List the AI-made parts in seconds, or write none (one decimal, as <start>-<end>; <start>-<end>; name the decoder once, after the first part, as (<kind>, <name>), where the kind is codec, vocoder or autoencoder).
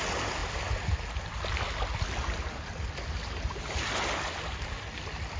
none